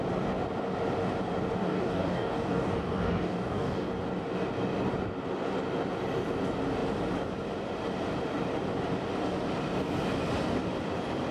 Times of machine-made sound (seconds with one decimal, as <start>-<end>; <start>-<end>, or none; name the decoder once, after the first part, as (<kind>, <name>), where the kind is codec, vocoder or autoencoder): 1.6-3.9 (codec, DAC)